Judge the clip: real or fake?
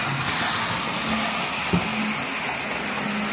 real